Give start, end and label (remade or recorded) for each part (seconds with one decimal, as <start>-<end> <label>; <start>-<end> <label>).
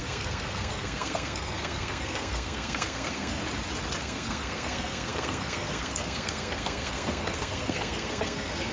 0.0-3.4 remade; 3.4-4.0 recorded; 4.0-8.7 remade